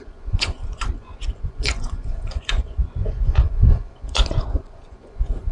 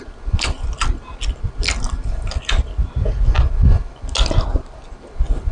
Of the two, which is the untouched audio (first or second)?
second